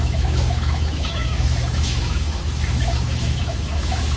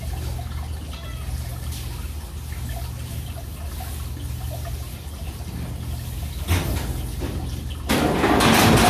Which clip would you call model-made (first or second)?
first